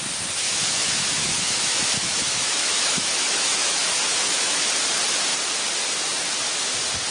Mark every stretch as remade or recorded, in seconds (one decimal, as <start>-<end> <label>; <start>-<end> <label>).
0.0-0.4 recorded; 0.4-4.7 remade; 4.7-7.1 recorded